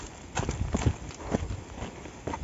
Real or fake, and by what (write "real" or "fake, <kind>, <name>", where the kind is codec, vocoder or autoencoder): real